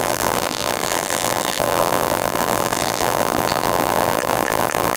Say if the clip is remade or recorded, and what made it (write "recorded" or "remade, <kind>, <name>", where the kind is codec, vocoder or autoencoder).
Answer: remade, vocoder, BigVGAN v2